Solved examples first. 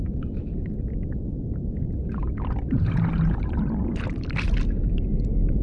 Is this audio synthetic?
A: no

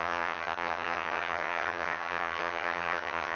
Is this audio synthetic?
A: yes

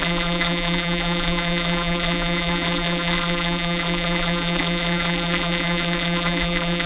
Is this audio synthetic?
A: yes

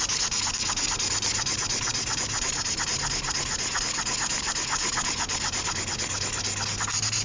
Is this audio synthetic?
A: no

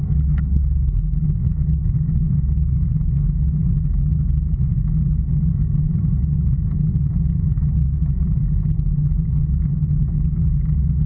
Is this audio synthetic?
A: no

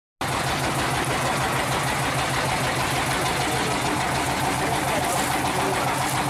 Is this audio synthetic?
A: no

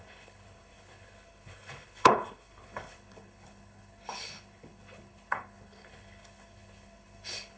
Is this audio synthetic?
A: yes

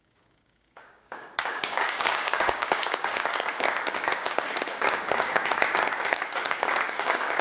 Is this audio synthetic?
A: yes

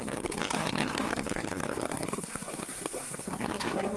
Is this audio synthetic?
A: yes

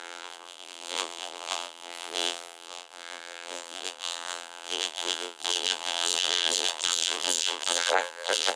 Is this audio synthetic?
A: yes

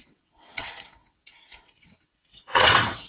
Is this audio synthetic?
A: yes